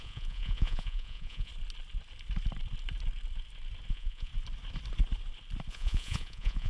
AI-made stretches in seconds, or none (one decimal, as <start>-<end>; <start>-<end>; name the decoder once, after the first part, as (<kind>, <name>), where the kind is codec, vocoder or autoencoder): 0.0-1.5 (vocoder, Vocos); 3.9-4.3; 5.7-6.7